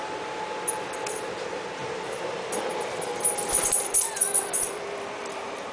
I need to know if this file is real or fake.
fake